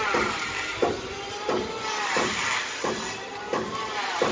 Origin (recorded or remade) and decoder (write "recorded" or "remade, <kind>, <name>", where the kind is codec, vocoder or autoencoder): remade, vocoder, BigVGAN v2